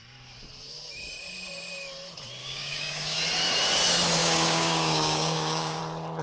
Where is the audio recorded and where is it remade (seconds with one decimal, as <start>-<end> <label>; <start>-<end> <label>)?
0.0-2.4 recorded; 2.4-3.2 remade; 3.2-4.2 recorded; 4.2-5.8 remade; 5.8-6.2 recorded